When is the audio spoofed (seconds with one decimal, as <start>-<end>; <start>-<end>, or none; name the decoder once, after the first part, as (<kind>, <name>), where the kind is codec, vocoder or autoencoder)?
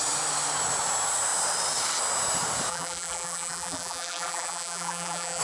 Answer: 2.7-5.4 (vocoder, BigVGAN v2)